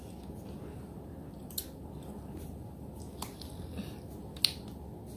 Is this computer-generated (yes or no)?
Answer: no